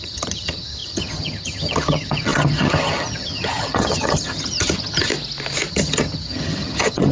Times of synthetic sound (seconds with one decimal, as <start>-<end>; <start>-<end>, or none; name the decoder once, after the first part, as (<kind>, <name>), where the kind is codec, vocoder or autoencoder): 0.0-5.1 (vocoder, HiFi-GAN); 5.7-7.1